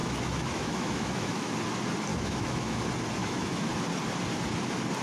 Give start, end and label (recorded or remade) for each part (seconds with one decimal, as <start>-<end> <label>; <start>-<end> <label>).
0.0-1.5 remade; 1.5-2.1 recorded; 2.1-2.8 remade; 2.8-3.2 recorded; 3.2-3.7 remade; 3.7-5.0 recorded